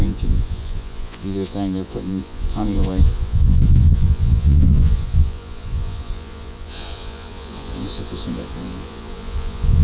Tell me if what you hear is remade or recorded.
remade